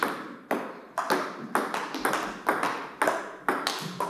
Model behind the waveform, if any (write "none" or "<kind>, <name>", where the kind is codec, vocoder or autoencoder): none